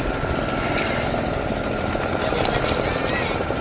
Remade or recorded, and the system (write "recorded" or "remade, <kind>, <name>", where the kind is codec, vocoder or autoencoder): recorded